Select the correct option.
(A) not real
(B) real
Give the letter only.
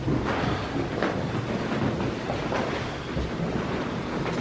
A